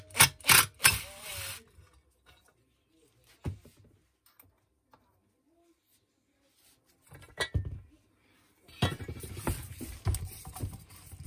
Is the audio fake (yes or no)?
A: no